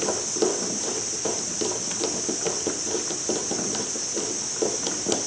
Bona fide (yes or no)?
yes